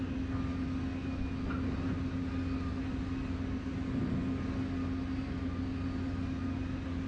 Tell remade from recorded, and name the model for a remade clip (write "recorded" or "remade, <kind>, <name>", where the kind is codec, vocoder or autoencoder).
recorded